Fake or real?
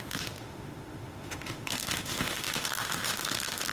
fake